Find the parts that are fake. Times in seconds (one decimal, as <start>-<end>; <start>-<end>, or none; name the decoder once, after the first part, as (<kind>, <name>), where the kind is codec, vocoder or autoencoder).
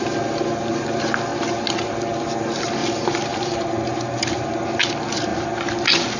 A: 2.8-3.6 (vocoder, BigVGAN v2)